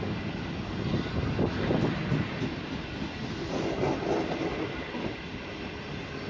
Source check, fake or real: real